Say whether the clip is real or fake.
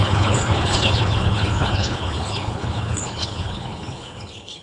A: fake